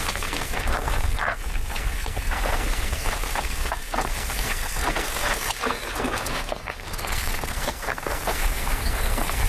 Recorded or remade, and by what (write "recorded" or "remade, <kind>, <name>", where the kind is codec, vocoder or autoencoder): remade, codec, SNAC